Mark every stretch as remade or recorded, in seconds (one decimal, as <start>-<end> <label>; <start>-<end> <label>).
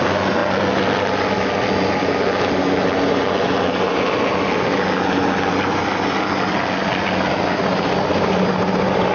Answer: 0.0-9.1 recorded